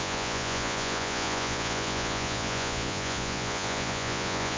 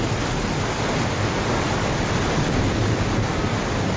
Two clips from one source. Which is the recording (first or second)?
second